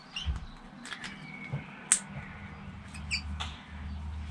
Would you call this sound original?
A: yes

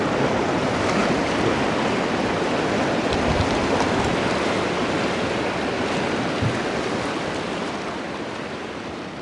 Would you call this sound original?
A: yes